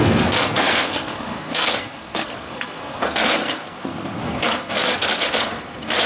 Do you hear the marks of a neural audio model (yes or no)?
yes